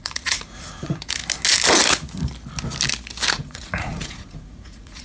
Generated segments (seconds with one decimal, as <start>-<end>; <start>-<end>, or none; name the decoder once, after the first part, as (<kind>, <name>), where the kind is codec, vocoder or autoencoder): 0.0-1.2 (vocoder, Vocos); 3.3-5.0